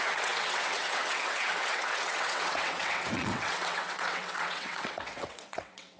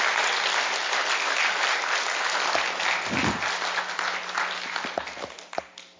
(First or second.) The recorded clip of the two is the second